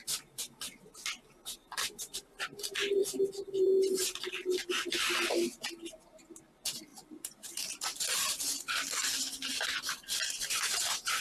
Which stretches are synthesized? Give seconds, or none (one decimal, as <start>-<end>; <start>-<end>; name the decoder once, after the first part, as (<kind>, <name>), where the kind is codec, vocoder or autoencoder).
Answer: 3.0-4.9 (vocoder, BigVGAN v2); 6.9-11.2